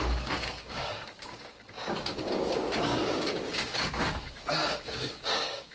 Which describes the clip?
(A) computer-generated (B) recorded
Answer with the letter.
A